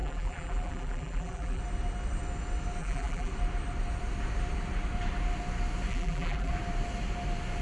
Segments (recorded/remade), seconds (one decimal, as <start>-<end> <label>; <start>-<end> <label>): 0.0-1.6 remade; 1.6-2.8 recorded; 2.8-3.3 remade; 3.3-5.9 recorded; 5.9-6.5 remade; 6.5-7.6 recorded